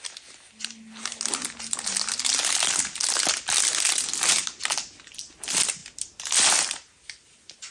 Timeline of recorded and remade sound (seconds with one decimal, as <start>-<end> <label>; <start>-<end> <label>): 0.0-7.7 recorded